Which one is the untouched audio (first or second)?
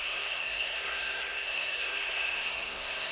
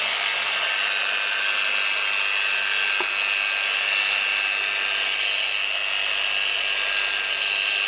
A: second